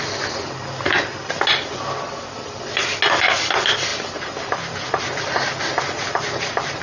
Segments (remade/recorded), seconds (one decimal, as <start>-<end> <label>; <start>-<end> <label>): 0.0-6.8 recorded

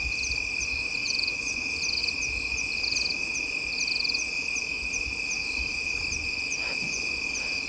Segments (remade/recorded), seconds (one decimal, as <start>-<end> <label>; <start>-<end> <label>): 0.0-1.0 recorded; 1.0-1.6 remade; 1.6-6.2 recorded; 6.2-7.2 remade; 7.2-7.7 recorded

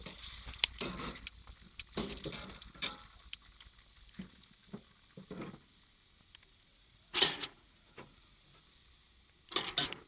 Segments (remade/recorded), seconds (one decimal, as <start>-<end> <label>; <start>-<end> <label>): 0.0-6.7 recorded; 6.7-8.6 remade; 8.6-10.1 recorded

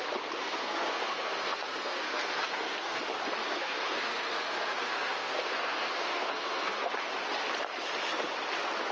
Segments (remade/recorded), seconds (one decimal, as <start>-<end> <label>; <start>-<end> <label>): 0.0-0.4 recorded; 0.4-3.0 remade; 3.0-3.4 recorded; 3.4-7.1 remade; 7.1-8.9 recorded

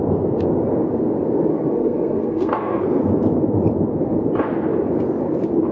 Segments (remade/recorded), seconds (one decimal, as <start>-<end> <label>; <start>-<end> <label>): 0.0-1.5 recorded; 1.5-2.8 remade; 2.8-5.7 recorded

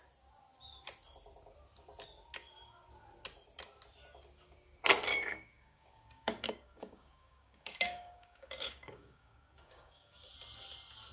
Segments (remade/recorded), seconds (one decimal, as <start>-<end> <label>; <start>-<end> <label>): 0.0-5.1 recorded; 5.1-10.3 remade; 10.3-11.1 recorded

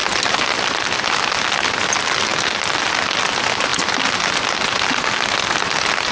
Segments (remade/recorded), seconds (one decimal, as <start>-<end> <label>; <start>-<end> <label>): 0.0-6.1 recorded

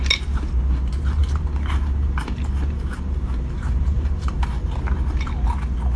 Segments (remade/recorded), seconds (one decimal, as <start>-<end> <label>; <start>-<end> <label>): 0.0-1.2 recorded; 1.2-4.8 remade; 4.8-6.0 recorded